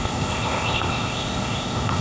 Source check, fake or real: fake